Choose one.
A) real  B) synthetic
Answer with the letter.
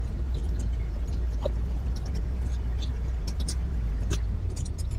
B